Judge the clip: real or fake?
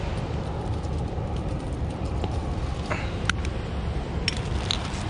real